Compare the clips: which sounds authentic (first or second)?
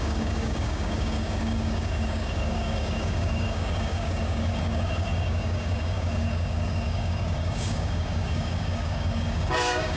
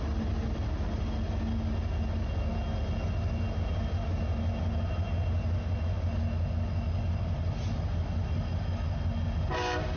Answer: second